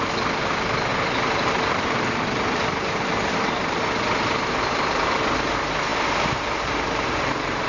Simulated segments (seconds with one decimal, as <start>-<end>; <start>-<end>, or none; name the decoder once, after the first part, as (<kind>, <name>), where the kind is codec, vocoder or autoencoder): 0.9-3.8 (vocoder, BigVGAN v2); 5.9-7.7